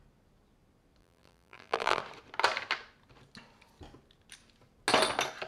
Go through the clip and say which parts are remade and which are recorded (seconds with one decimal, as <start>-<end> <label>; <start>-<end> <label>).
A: 0.0-1.0 recorded; 1.0-2.0 remade; 2.0-5.5 recorded